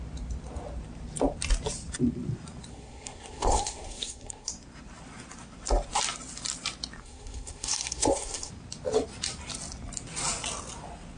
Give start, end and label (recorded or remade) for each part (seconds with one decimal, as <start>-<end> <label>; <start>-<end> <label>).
0.0-2.7 recorded; 2.7-4.5 remade; 4.5-7.0 recorded; 7.0-8.5 remade; 8.5-11.2 recorded